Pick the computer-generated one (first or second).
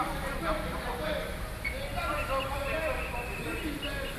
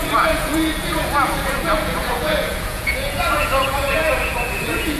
second